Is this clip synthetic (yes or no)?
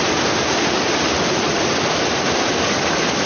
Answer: no